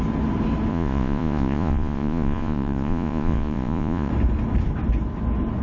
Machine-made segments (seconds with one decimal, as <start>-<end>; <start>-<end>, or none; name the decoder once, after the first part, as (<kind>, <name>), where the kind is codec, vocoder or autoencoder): 0.7-4.1 (vocoder, Vocos)

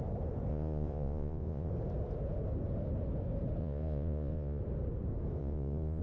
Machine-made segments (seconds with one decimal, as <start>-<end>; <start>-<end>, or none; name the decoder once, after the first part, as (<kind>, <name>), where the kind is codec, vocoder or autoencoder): 0.5-1.7 (vocoder, Vocos); 3.6-4.6; 5.4-6.0